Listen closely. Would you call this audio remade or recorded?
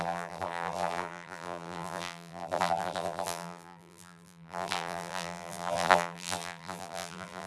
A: remade